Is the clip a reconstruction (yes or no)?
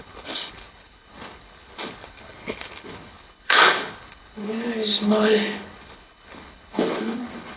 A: yes